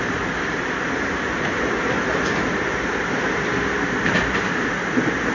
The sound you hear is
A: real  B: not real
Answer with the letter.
B